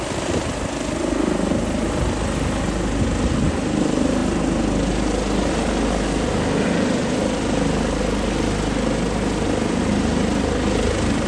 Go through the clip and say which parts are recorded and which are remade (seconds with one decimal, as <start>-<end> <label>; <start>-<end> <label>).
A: 0.0-11.3 recorded